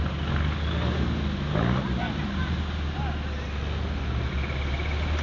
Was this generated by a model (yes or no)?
no